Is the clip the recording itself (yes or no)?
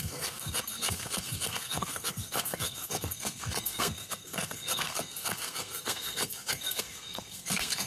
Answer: no